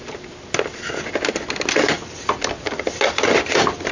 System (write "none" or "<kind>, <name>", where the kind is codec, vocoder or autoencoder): none